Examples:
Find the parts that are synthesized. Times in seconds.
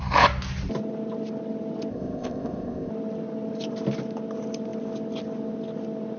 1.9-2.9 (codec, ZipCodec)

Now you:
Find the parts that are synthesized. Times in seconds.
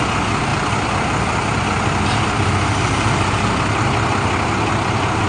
none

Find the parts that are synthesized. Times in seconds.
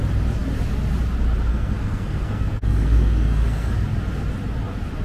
1.5-3.7 (codec, SNAC)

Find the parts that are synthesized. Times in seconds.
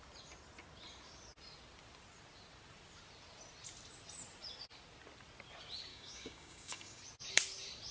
5.9-7.0 (codec, DAC)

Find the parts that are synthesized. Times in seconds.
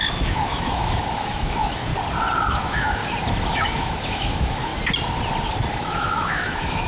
0.0-1.9 (autoencoder, DAC-VAE); 2.6-3.0; 3.5-4.7; 5.7-6.9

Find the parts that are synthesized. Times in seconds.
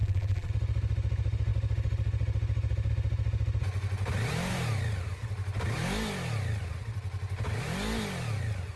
0.0-0.5 (vocoder, BigVGAN v2)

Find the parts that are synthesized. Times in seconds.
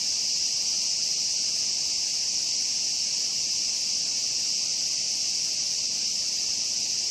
none